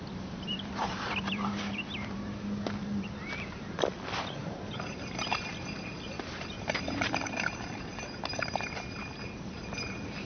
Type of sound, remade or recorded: remade